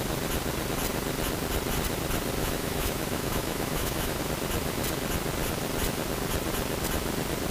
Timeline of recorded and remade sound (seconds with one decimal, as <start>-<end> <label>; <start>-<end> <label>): 0.0-2.4 recorded; 2.4-4.2 remade; 4.2-7.5 recorded